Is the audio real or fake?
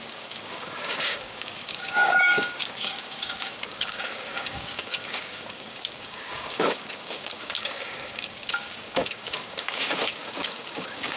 fake